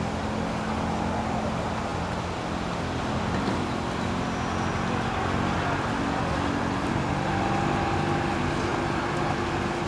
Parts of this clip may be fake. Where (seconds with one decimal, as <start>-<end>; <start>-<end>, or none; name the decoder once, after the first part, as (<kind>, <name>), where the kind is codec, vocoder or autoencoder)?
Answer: none